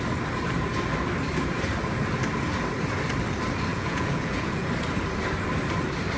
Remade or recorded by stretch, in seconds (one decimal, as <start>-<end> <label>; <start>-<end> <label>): 0.0-3.7 recorded; 3.7-4.7 remade; 4.7-6.2 recorded